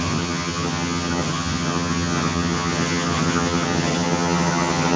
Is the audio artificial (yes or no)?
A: yes